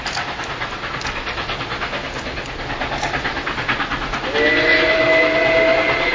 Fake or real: real